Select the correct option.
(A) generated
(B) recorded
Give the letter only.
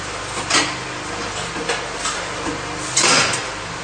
B